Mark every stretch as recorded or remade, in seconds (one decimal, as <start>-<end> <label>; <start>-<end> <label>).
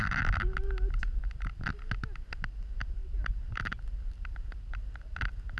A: 0.0-5.6 recorded